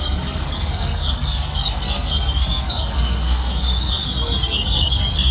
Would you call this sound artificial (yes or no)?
yes